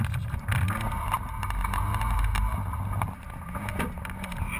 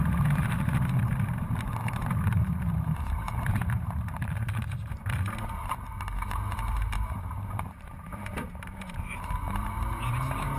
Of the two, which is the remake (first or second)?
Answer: second